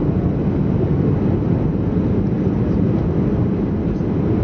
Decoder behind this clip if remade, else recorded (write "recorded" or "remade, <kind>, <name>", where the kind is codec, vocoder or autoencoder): recorded